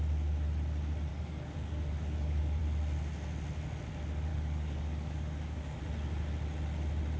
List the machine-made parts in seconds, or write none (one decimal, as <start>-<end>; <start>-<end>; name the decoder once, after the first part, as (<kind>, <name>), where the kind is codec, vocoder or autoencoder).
1.1-2.6 (codec, DAC); 4.3-5.8